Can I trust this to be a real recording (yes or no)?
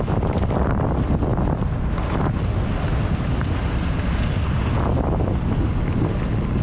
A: yes